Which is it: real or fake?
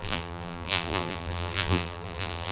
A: fake